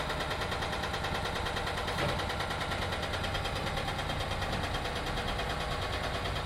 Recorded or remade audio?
recorded